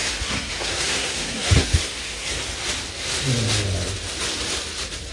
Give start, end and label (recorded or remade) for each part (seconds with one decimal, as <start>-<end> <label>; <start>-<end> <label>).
0.0-2.4 remade; 2.4-5.1 recorded